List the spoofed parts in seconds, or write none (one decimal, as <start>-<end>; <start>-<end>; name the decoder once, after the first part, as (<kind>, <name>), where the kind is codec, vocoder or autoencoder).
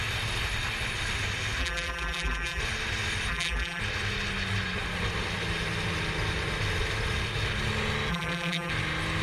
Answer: 1.6-2.6 (vocoder, BigVGAN v2); 3.3-3.8; 8.1-8.7